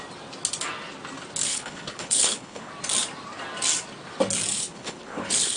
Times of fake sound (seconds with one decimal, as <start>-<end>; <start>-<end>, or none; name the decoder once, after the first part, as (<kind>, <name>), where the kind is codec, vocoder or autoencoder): 1.5-2.7 (codec, HILCodec); 4.5-5.6